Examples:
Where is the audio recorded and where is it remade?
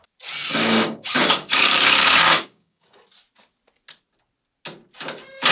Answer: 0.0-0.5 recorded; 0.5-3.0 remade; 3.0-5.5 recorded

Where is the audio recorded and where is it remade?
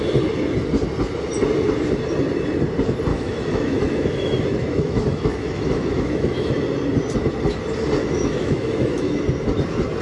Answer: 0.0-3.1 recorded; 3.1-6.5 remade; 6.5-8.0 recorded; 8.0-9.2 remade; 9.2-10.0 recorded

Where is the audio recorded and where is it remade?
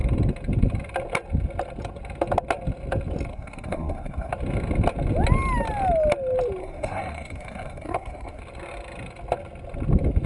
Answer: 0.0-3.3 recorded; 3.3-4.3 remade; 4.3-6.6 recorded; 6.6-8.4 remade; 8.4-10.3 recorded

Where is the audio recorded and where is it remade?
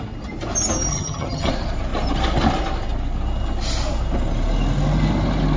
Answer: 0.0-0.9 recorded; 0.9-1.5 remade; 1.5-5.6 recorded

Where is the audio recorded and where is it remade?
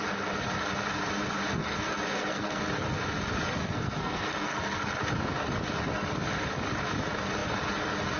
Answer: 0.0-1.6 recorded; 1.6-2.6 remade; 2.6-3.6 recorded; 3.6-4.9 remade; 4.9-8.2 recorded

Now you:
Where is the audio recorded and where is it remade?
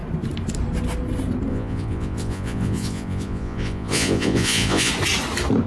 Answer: 0.0-1.5 recorded; 1.5-4.9 remade; 4.9-5.7 recorded